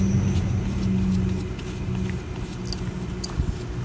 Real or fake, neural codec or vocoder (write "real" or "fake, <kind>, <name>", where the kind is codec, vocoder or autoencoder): real